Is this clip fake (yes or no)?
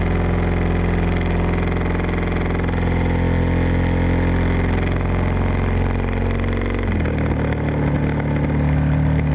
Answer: no